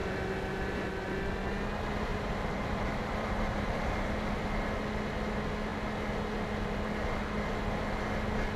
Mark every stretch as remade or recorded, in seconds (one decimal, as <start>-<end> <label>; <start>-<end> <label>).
0.0-2.1 recorded; 2.1-4.2 remade; 4.2-8.6 recorded